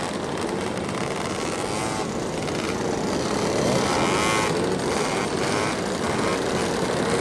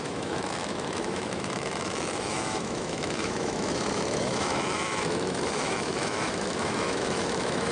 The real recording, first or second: first